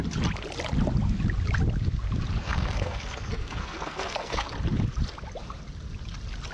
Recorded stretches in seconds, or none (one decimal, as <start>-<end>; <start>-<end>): 0.0-2.4; 4.5-6.5